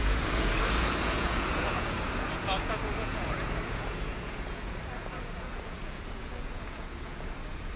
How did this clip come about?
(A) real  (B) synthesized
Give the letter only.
B